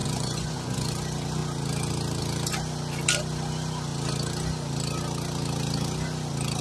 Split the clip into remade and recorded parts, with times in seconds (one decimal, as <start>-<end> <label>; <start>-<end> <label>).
0.0-0.9 remade; 0.9-6.6 recorded